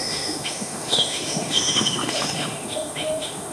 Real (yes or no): no